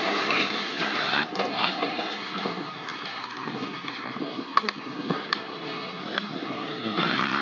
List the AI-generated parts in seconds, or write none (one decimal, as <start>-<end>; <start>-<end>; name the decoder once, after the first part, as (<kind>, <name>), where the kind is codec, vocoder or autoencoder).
0.0-7.4 (codec, SNAC)

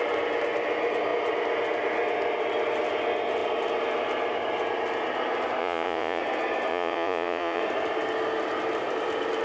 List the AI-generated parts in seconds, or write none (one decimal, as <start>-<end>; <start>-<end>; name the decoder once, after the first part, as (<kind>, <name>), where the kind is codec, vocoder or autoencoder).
5.6-6.2 (vocoder, Vocos); 6.7-7.6

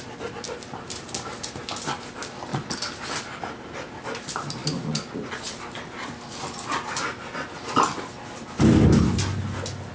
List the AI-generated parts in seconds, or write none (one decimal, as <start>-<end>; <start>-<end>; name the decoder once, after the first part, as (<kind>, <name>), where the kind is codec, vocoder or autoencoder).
none

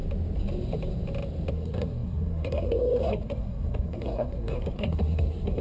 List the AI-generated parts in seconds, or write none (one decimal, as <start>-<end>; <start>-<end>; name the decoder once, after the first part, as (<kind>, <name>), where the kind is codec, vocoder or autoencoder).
1.5-5.6 (codec, SNAC)

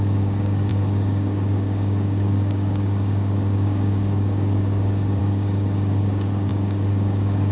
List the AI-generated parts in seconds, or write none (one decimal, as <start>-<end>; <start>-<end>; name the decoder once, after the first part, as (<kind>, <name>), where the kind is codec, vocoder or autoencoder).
0.0-7.5 (codec, DAC)

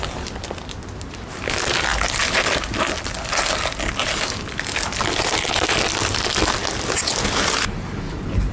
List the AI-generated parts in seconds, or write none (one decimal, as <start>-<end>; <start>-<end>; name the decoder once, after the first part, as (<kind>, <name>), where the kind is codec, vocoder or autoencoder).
none

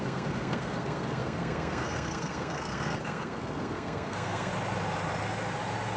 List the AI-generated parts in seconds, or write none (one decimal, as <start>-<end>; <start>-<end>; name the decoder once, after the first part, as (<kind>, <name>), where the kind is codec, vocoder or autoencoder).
0.0-4.5 (codec, SNAC)